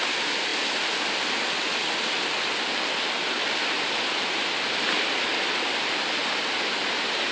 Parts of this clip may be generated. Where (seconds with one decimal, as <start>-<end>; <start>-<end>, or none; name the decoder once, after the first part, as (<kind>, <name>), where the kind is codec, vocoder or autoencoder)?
none